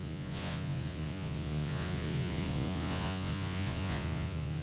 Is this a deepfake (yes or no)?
yes